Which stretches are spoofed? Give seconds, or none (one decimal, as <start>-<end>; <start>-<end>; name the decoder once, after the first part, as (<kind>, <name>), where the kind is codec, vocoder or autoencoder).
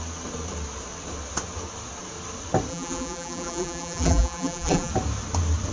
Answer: 2.7-4.9 (vocoder, BigVGAN v2)